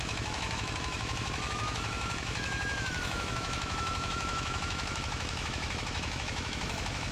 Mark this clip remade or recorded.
remade